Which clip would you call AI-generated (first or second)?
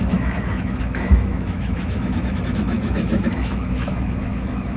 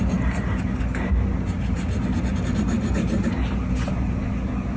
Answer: first